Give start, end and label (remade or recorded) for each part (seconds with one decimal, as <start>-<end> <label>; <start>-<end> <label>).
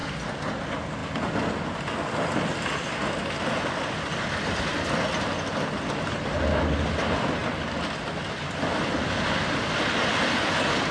0.0-1.0 recorded; 1.0-1.5 remade; 1.5-10.9 recorded